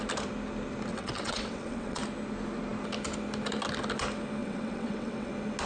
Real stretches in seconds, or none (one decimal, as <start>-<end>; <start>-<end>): 0.0-0.9; 2.0-4.4; 5.3-5.7